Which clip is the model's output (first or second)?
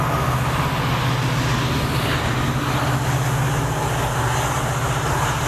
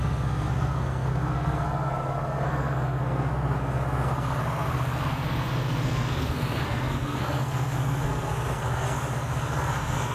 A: second